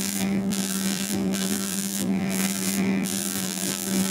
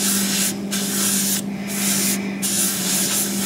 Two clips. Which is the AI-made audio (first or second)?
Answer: first